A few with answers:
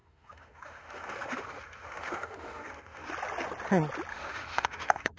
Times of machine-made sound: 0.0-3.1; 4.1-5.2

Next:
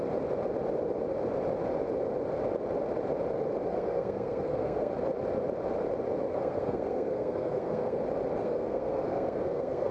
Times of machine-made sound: 3.7-4.9; 6.3-8.0; 8.4-9.9

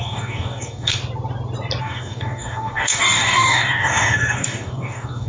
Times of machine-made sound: 0.0-1.0; 1.8-5.3

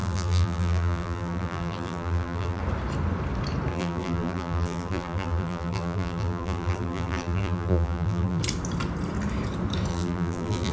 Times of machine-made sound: 0.0-2.6; 3.7-8.4; 9.9-10.7

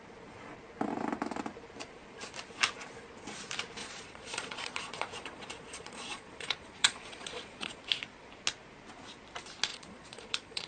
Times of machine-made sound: 3.8-7.8; 9.7-10.7

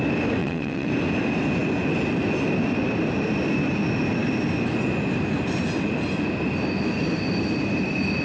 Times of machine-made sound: 0.4-0.9

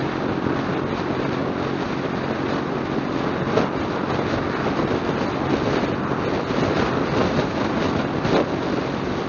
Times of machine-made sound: none